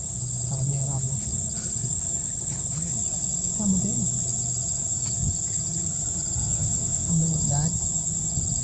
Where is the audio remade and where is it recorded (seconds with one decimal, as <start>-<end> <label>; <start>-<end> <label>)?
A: 0.0-6.4 recorded; 6.4-7.1 remade; 7.1-8.6 recorded